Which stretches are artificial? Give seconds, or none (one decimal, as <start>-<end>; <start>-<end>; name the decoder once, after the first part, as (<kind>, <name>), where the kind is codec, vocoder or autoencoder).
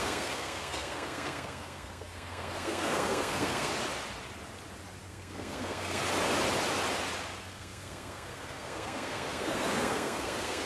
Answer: 0.0-3.7 (codec, SNAC); 5.1-6.0; 7.4-10.7